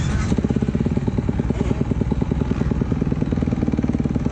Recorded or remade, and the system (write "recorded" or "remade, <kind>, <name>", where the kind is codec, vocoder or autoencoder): recorded